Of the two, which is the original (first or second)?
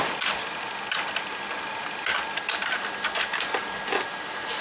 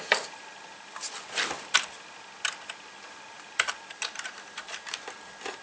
first